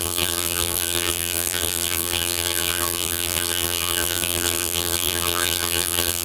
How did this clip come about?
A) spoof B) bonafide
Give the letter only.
A